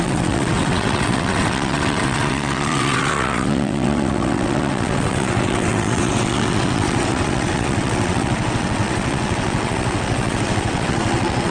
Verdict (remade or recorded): remade